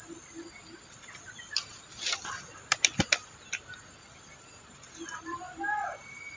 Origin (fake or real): real